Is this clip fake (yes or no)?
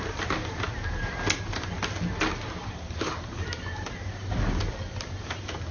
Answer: no